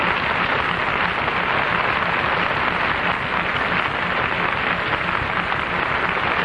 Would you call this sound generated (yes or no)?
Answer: no